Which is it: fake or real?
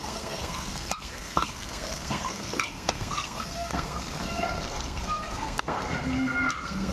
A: fake